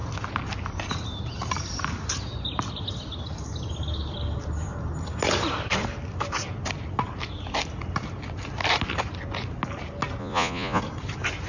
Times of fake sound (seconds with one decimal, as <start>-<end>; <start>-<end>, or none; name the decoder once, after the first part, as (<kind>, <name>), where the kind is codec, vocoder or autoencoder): 10.2-10.8 (vocoder, Vocos)